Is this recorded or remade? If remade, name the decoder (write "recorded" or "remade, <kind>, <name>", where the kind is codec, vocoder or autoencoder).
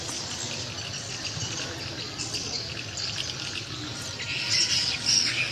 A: recorded